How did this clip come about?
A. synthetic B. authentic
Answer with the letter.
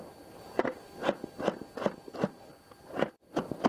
B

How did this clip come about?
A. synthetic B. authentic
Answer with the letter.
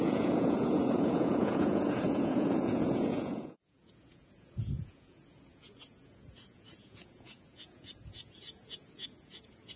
A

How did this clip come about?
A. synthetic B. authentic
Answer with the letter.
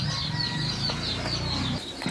B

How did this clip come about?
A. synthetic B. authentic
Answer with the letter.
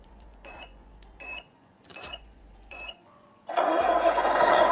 A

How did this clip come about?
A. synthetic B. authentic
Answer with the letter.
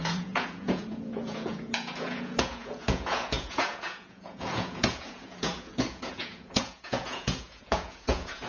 A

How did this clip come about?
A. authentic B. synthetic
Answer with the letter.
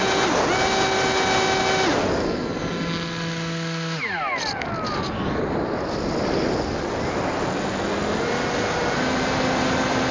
A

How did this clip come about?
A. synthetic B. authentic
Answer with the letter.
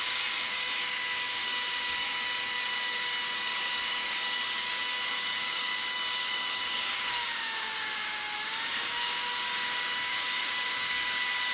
A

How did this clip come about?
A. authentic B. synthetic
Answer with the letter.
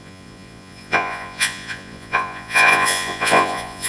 B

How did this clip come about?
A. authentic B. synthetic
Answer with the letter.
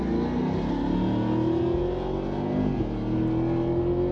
A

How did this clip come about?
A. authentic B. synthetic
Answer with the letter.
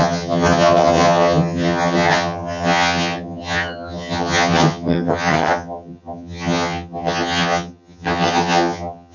B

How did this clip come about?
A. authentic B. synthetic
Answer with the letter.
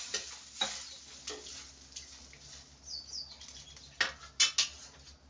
A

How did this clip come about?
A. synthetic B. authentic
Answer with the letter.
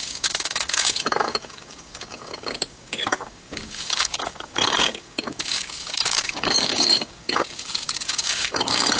A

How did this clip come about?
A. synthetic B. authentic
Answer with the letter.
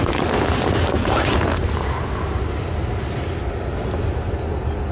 B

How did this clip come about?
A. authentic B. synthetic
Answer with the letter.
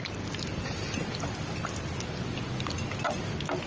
A